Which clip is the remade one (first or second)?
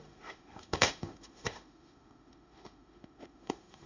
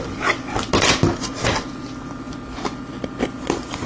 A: first